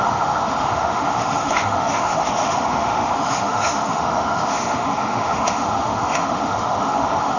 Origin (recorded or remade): remade